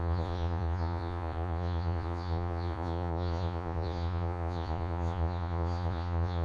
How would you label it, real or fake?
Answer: fake